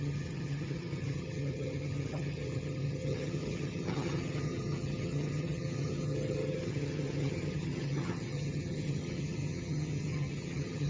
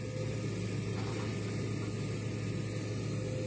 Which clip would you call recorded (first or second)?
second